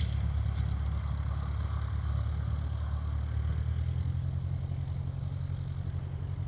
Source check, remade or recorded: recorded